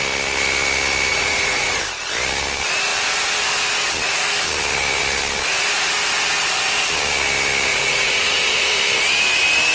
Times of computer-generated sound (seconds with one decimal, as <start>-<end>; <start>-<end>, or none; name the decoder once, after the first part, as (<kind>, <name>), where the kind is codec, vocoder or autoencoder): 1.1-1.8 (vocoder, Vocos); 7.7-8.8